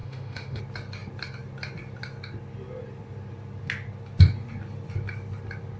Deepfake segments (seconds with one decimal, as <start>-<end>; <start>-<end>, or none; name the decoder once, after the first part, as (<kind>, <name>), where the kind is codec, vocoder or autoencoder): 0.0-0.6 (autoencoder, DAC-VAE)